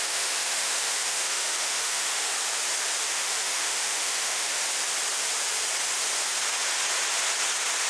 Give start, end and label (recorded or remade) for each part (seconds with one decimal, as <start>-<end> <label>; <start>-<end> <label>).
0.0-2.3 remade; 2.3-3.0 recorded; 3.0-4.6 remade; 4.6-7.9 recorded